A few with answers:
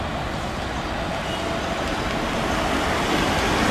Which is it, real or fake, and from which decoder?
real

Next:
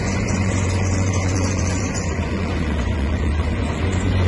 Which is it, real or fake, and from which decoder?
fake, vocoder, Vocos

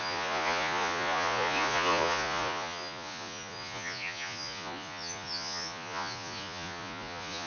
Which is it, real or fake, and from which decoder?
fake, vocoder, Vocos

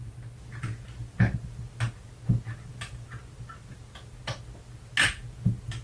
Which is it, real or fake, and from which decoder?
real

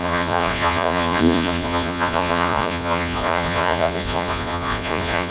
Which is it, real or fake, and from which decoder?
fake, vocoder, Vocos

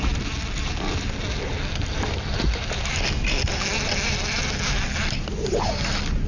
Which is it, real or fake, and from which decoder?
real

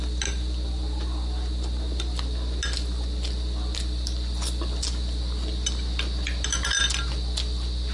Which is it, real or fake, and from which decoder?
real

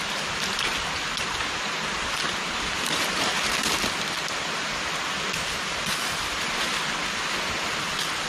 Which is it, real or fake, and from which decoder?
real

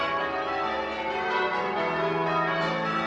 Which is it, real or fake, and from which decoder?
real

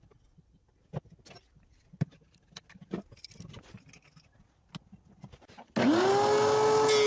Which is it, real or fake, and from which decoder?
real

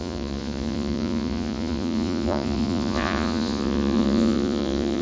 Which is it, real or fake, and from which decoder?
fake, vocoder, Vocos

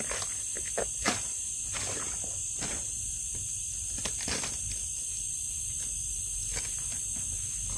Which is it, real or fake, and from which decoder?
real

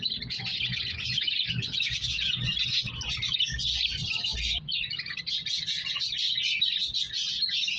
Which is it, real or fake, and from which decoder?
real